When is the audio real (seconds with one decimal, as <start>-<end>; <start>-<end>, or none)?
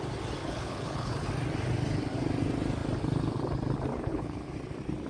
0.0-0.4; 1.3-3.9; 4.5-5.1